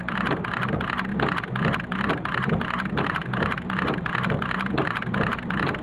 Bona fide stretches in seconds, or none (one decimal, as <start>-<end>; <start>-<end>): 1.1-2.1